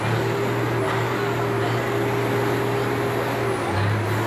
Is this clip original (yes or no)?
yes